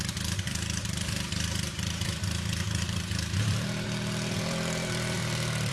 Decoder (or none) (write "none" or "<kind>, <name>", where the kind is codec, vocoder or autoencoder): vocoder, BigVGAN v2